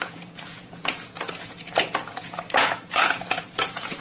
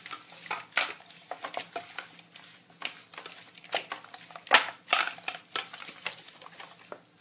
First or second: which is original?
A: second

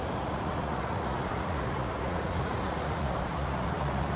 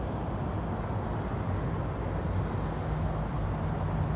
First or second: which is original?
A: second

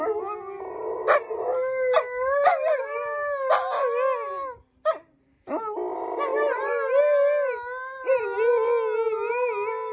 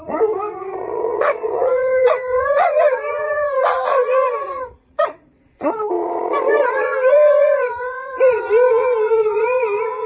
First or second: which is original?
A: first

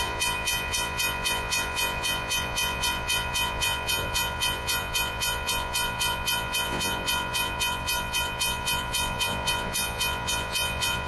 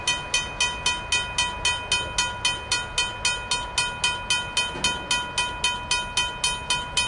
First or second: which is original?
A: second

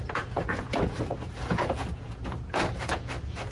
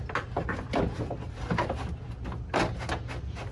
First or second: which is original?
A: second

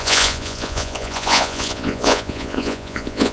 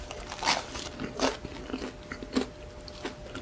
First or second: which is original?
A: second